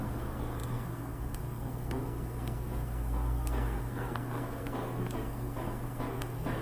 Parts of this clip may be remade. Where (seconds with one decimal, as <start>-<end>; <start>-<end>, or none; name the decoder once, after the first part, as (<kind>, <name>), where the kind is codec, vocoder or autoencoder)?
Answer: 0.0-6.6 (codec, SNAC)